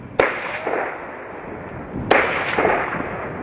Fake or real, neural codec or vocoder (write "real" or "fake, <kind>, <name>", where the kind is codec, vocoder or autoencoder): real